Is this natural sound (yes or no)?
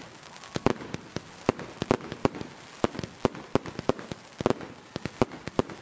yes